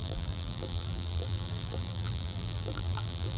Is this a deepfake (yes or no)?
yes